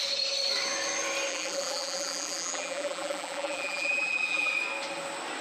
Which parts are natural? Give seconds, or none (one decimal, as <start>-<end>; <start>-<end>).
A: 0.0-1.3; 4.5-5.4

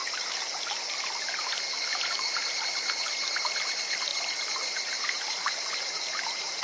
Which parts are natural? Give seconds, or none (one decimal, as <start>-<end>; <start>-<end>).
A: 2.6-6.6